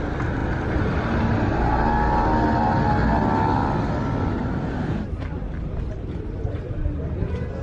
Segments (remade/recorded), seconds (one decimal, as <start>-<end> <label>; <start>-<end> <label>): 0.0-4.4 recorded; 4.4-6.4 remade; 6.4-7.6 recorded